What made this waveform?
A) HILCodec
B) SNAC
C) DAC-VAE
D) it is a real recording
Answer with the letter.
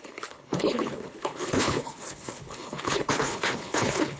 A